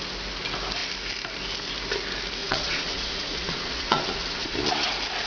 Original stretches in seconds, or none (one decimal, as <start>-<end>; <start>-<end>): 0.0-2.4; 4.6-5.3